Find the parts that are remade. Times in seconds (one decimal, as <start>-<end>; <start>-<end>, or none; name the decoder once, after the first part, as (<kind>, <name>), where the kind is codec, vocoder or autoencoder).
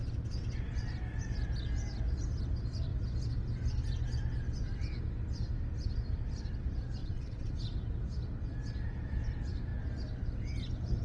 7.0-7.5 (vocoder, WaveNeXt)